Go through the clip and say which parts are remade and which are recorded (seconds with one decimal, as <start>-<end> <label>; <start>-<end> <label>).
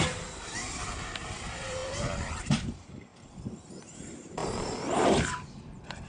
0.0-1.8 remade; 1.8-2.4 recorded; 2.4-3.1 remade; 3.1-3.8 recorded; 3.8-6.1 remade